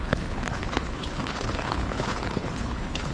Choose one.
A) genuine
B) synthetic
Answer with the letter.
B